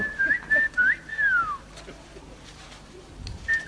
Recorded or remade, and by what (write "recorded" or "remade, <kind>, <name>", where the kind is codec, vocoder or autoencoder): remade, vocoder, BigVGAN v2